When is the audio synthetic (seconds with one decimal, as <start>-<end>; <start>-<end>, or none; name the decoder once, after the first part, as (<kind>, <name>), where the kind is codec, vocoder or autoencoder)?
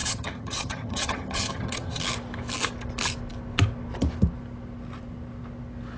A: 0.0-2.0 (vocoder, HiFi-GAN)